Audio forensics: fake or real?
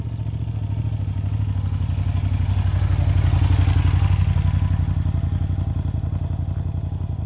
real